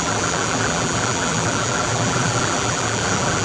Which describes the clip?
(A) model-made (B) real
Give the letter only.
A